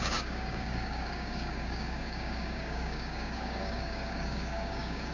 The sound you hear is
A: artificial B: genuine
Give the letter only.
A